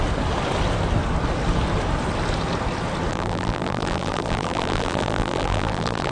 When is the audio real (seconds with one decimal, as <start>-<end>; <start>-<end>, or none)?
0.0-3.1